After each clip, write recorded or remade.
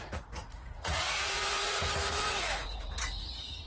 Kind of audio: remade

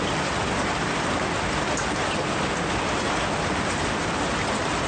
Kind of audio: recorded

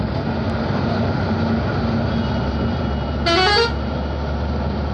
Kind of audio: recorded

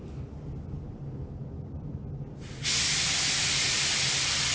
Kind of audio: recorded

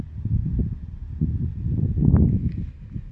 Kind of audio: recorded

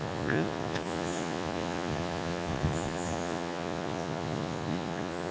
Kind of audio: remade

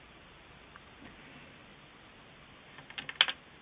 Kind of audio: recorded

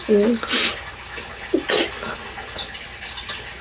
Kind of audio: recorded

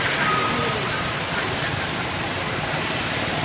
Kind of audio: recorded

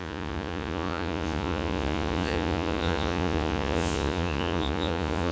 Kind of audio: remade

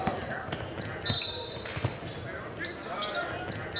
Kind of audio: recorded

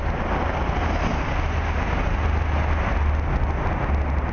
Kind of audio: recorded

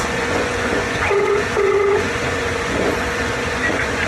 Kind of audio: remade